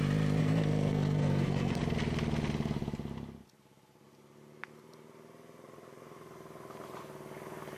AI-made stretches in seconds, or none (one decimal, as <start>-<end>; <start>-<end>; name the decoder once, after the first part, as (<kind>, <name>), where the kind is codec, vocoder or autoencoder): 0.4-1.8 (codec, SNAC)